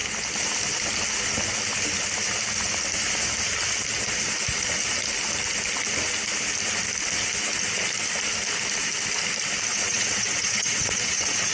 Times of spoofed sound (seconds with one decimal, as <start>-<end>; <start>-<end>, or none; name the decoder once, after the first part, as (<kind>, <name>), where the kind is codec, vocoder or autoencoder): 9.7-11.5 (vocoder, WaveNeXt)